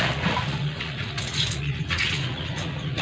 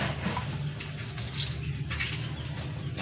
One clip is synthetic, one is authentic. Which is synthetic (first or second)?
first